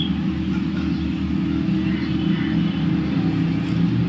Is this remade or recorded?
recorded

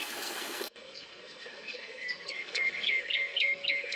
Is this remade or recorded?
remade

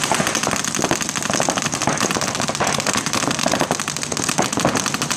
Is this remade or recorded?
recorded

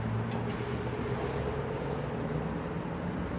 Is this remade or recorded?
recorded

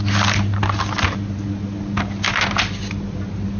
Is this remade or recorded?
recorded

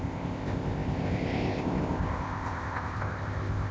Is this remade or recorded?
remade